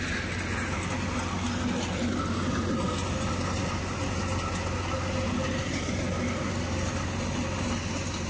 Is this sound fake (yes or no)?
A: no